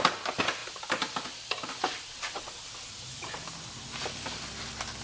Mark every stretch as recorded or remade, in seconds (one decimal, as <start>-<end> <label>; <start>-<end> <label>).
0.0-5.0 recorded